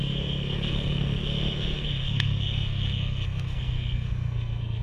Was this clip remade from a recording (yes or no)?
yes